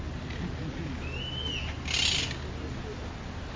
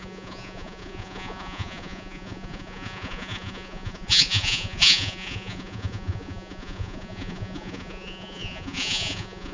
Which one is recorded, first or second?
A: first